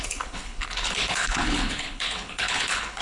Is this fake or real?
fake